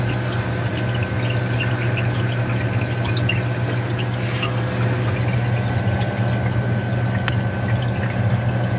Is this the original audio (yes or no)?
yes